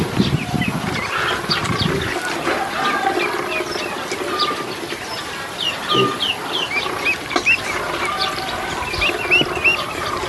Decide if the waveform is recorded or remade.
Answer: recorded